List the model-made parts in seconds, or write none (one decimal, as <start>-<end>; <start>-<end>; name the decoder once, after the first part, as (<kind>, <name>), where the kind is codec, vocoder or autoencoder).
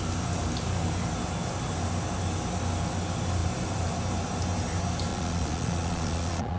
5.1-6.6 (vocoder, Vocos)